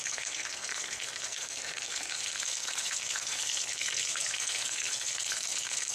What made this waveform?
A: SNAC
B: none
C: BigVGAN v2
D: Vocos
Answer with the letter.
A